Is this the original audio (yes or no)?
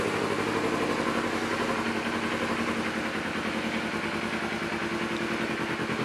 yes